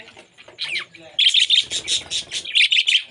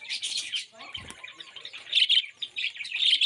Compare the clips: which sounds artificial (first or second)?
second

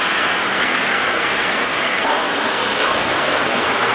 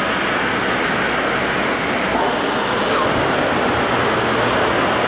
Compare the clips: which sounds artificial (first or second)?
first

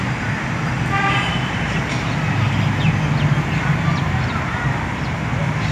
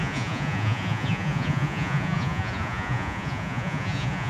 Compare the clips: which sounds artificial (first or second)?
second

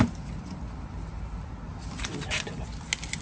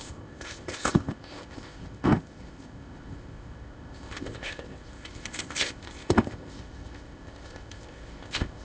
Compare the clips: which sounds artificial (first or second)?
second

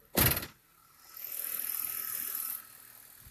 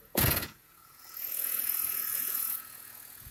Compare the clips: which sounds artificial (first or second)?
second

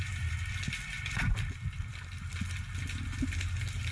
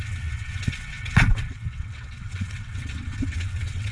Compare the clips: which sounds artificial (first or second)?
second